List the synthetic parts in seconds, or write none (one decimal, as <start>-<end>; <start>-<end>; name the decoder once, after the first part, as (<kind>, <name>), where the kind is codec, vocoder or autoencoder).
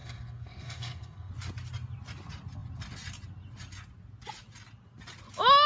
0.0-1.3 (codec, SNAC)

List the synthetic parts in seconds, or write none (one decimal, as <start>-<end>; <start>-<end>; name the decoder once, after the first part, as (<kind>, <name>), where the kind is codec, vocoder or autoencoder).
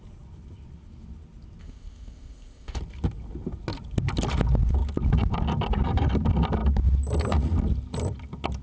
1.6-2.8 (codec, ZipCodec)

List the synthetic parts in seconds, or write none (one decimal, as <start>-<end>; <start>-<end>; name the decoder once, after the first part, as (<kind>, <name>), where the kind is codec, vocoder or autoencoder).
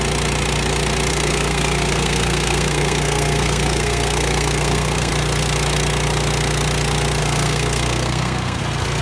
1.1-5.1 (codec, SNAC); 7.2-8.6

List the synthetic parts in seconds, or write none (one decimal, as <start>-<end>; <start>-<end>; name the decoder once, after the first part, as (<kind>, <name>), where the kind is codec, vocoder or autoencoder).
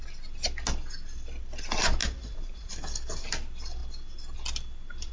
2.0-2.7 (vocoder, BigVGAN v2)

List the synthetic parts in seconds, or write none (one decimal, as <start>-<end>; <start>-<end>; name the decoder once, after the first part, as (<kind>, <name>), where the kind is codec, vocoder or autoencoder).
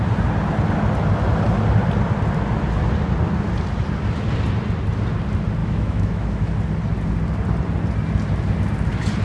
5.6-6.5 (autoencoder, DAC-VAE)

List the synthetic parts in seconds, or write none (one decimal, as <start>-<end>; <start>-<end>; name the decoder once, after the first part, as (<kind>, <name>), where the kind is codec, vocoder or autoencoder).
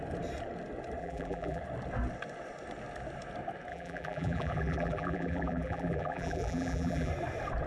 1.0-1.6 (vocoder, BigVGAN v2); 3.7-7.1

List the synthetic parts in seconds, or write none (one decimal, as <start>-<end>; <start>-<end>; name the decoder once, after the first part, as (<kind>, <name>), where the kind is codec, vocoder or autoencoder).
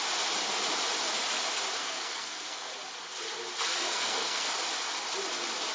1.8-2.7 (codec, SNAC); 3.7-4.5